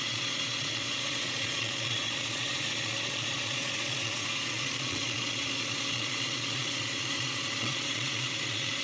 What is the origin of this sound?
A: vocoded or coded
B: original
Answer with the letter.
A